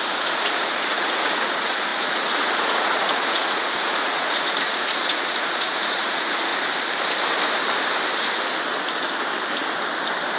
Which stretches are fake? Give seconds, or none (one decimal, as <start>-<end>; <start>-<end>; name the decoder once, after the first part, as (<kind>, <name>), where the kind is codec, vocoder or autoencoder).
0.0-6.5 (vocoder, Vocos)